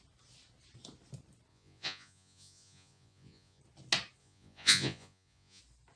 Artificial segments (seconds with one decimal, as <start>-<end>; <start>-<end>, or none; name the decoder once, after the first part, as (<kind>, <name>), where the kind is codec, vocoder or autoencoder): 1.5-3.6 (vocoder, Vocos); 4.2-5.6

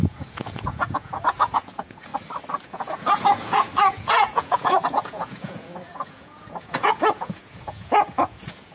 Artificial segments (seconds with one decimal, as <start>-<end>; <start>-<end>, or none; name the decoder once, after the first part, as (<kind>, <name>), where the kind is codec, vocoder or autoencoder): 0.0-2.1 (vocoder, Vocos); 2.6-8.7

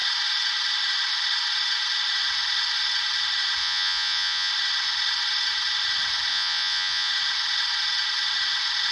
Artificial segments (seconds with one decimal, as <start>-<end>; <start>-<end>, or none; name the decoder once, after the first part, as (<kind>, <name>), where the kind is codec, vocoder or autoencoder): 3.6-4.5 (vocoder, Vocos); 6.3-7.1

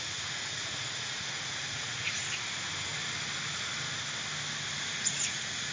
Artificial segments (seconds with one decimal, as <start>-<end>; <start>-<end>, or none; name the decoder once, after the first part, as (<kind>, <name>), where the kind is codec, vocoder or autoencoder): 0.0-2.2 (vocoder, Vocos); 5.1-5.7

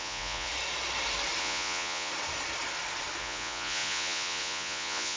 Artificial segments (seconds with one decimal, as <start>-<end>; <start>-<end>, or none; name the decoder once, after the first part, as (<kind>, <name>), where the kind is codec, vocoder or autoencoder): 0.0-0.5 (vocoder, Vocos); 1.4-2.1; 3.2-5.2

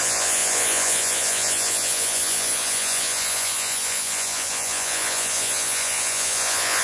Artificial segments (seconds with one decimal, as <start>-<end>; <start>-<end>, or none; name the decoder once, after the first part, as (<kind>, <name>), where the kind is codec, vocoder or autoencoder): 0.0-6.8 (vocoder, Vocos)

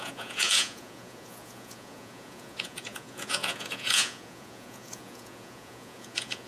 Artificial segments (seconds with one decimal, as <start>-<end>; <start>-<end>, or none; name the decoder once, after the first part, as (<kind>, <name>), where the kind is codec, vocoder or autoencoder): 0.0-6.5 (vocoder, Vocos)